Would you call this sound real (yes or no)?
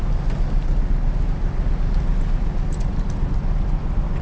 yes